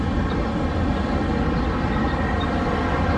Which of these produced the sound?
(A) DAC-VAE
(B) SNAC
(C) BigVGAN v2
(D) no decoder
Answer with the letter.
D